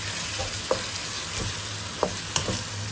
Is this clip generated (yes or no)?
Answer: no